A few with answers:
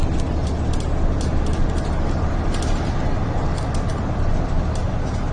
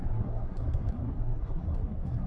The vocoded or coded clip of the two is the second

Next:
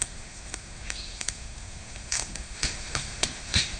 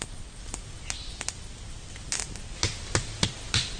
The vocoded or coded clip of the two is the first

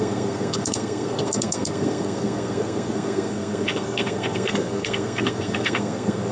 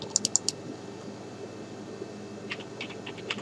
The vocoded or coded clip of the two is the first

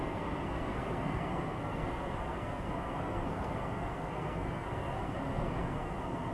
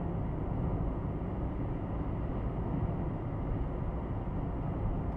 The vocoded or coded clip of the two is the first